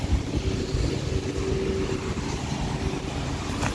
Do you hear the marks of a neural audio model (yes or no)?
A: no